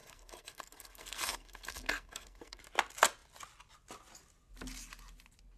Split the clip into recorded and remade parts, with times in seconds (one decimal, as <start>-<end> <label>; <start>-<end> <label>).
0.0-2.6 remade; 2.6-5.6 recorded